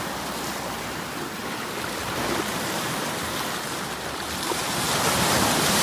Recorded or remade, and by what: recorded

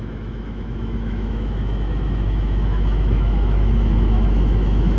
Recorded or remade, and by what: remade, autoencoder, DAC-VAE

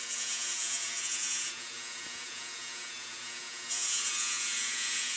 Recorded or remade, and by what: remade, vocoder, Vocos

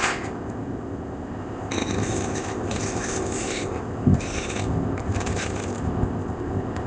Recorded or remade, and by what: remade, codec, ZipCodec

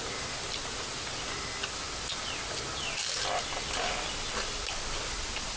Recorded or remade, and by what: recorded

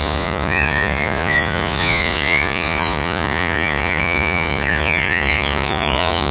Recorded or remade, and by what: remade, vocoder, Vocos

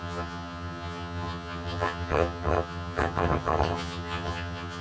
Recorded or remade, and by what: remade, vocoder, HiFi-GAN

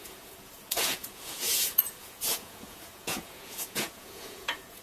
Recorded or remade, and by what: remade, vocoder, Vocos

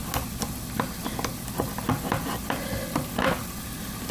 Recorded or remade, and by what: recorded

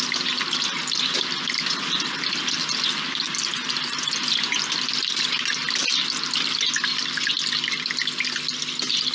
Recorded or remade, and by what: recorded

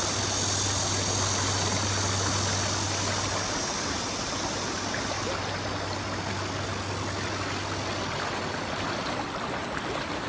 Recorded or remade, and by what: recorded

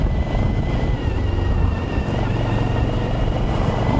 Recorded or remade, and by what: recorded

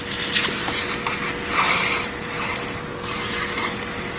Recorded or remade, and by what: recorded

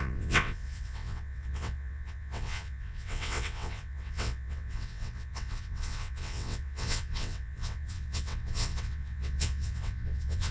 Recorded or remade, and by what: remade, vocoder, WaveNeXt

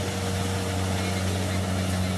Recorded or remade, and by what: recorded